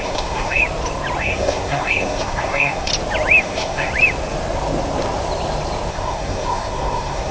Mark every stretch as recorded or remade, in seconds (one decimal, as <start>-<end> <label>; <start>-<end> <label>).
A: 0.0-0.6 remade; 0.6-1.2 recorded; 1.2-2.9 remade; 2.9-3.4 recorded; 3.4-3.9 remade; 3.9-5.9 recorded; 5.9-7.3 remade